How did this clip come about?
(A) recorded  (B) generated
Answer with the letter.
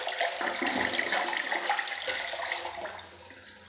A